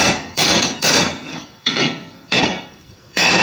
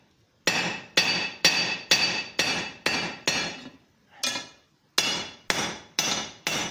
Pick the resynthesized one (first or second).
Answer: first